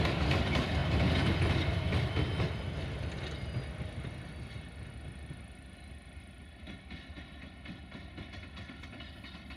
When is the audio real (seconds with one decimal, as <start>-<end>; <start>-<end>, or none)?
0.0-9.6